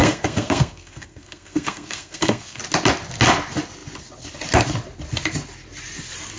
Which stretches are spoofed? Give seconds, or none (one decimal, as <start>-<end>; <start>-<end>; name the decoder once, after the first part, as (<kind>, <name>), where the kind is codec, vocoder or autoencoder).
0.0-2.6 (codec, SNAC)

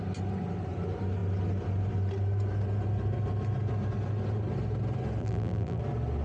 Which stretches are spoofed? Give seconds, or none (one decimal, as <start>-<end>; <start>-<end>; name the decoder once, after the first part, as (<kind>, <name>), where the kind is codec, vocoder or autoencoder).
5.2-5.8 (vocoder, BigVGAN v2)

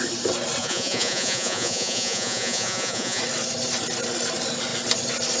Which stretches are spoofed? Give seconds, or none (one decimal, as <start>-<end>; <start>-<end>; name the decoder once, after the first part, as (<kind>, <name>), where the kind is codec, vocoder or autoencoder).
0.6-3.2 (vocoder, Vocos)

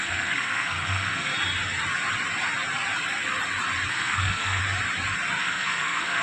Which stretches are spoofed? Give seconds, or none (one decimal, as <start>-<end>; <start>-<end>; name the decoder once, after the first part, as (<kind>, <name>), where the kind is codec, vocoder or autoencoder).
0.0-1.3 (codec, SNAC); 3.9-4.6; 5.4-6.2

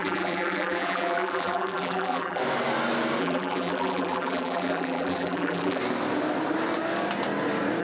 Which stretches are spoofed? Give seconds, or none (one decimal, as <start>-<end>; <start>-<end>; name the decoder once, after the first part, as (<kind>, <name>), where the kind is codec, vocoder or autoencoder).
0.0-2.4 (vocoder, BigVGAN v2); 3.2-5.8

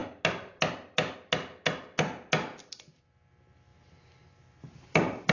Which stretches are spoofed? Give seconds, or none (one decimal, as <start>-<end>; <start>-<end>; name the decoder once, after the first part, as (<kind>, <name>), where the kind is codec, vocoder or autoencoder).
none